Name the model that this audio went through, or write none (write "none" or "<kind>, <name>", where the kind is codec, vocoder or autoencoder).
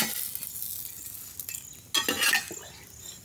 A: none